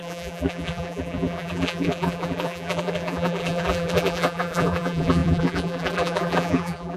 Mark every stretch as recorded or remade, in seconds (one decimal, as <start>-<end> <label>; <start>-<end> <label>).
0.0-7.0 remade